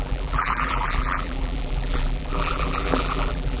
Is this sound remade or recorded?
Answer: remade